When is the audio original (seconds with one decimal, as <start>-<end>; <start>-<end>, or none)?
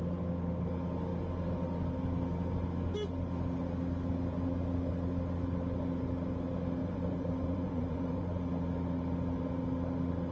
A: 0.0-6.8; 8.5-10.3